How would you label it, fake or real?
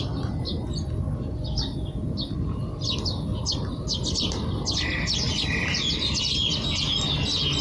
real